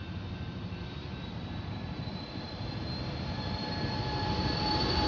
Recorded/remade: remade